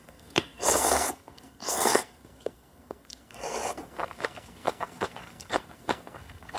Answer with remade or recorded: remade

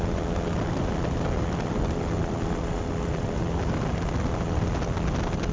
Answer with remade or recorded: recorded